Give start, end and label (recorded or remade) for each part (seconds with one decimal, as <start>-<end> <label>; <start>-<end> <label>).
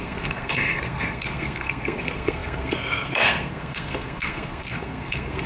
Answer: 0.0-5.5 remade